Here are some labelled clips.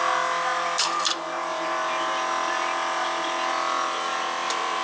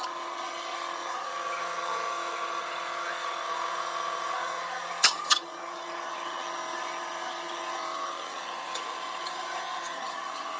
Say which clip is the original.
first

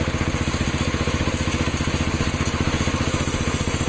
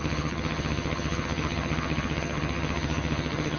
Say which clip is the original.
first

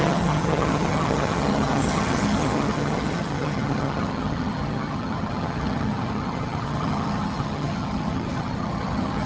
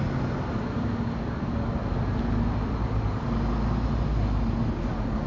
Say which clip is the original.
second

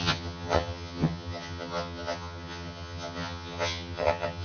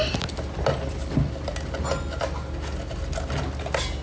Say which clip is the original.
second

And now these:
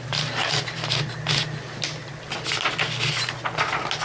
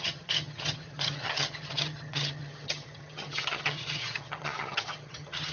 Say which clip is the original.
first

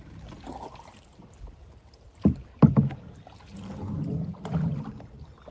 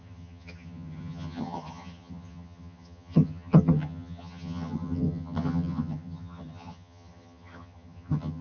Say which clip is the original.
first